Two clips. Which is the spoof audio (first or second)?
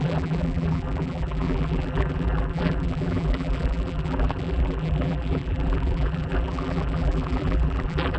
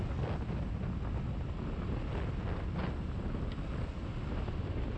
first